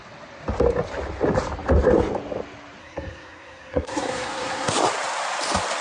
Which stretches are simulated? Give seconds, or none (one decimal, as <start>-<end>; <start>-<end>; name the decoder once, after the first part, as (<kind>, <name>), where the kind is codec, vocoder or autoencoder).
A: 2.8-4.7 (codec, SNAC)